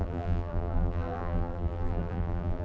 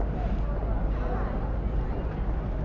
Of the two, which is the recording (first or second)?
second